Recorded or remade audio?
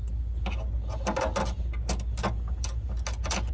recorded